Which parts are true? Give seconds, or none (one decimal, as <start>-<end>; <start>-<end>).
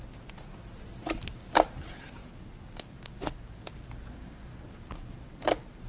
0.0-5.9